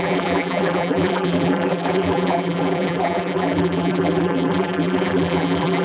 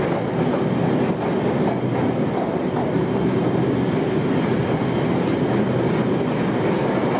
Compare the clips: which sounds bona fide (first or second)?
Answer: second